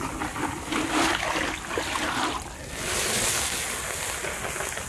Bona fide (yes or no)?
yes